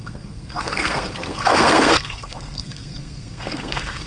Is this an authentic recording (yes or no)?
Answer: no